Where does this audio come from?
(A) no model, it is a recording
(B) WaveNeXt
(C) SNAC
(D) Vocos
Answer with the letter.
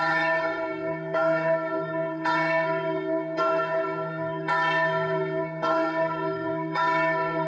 C